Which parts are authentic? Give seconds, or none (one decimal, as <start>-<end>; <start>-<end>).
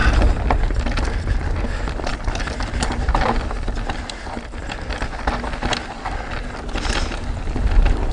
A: 0.0-8.1